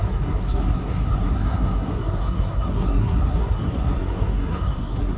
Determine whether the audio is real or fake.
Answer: fake